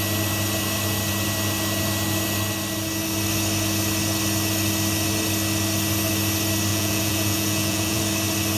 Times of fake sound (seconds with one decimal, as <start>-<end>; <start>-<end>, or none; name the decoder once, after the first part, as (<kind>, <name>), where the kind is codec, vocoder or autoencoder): 6.7-8.0 (vocoder, Vocos)